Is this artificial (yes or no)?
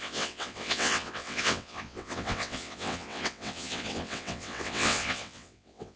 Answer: yes